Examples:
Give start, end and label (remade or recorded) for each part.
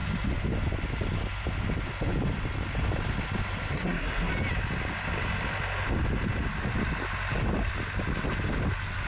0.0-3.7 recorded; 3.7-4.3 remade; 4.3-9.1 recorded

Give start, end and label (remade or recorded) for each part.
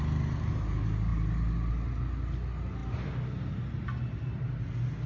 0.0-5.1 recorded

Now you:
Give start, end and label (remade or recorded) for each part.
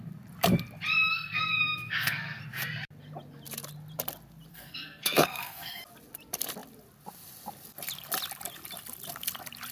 0.0-1.1 recorded; 1.1-2.4 remade; 2.4-4.5 recorded; 4.5-5.8 remade; 5.8-9.7 recorded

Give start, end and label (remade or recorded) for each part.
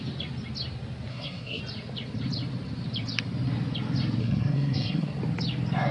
0.0-1.1 recorded; 1.1-1.6 remade; 1.6-4.2 recorded; 4.2-5.2 remade; 5.2-5.9 recorded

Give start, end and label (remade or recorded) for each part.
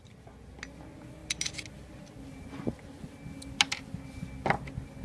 0.0-5.0 recorded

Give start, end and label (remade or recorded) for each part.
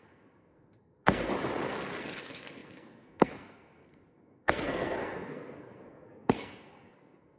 0.0-1.3 remade; 1.3-2.0 recorded; 2.0-7.4 remade